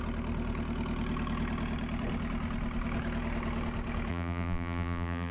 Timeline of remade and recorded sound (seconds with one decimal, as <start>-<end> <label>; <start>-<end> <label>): 0.0-4.1 recorded; 4.1-5.3 remade